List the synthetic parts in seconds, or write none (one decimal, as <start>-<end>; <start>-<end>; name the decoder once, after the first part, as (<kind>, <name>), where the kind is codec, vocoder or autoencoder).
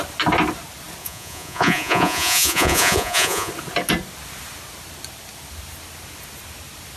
1.0-3.5 (vocoder, Vocos)